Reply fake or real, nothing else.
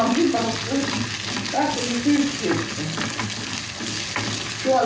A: real